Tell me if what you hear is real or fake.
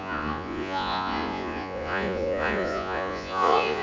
fake